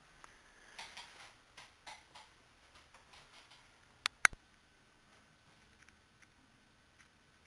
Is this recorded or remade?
recorded